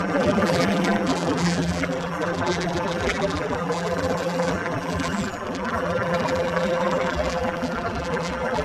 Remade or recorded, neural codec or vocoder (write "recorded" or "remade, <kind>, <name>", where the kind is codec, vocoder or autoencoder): remade, vocoder, BigVGAN v2